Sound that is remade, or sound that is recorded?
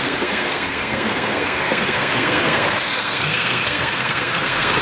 remade